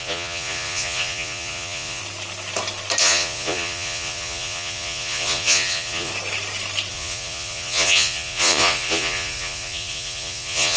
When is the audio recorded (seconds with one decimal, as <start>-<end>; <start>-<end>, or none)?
2.0-3.0; 6.1-6.9